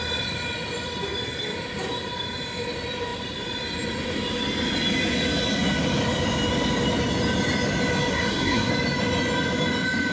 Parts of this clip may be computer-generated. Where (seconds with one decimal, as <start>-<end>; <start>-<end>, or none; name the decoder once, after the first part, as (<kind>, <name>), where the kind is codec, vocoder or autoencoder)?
8.1-8.7 (codec, SNAC)